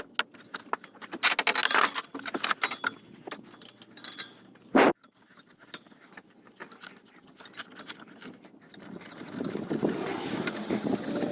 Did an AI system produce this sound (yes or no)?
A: no